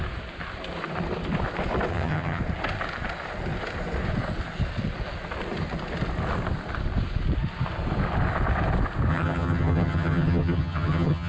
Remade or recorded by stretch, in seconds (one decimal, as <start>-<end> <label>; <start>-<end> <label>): 0.0-1.9 recorded; 1.9-2.4 remade; 2.4-9.1 recorded; 9.1-11.3 remade